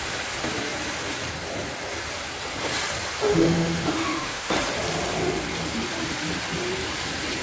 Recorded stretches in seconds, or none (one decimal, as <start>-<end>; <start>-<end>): 0.0-3.3; 4.5-7.4